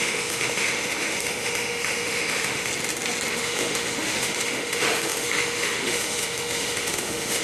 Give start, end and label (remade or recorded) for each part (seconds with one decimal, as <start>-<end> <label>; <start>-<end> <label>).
0.0-2.7 remade; 2.7-3.3 recorded; 3.3-7.4 remade